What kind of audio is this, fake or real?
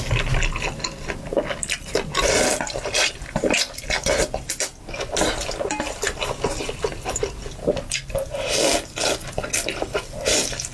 real